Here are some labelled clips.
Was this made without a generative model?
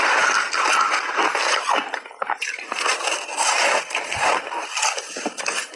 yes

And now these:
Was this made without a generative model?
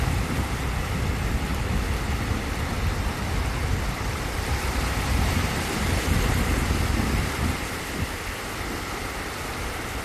yes